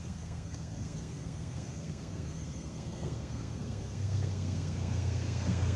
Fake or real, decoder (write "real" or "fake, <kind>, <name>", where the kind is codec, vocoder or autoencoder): fake, codec, SNAC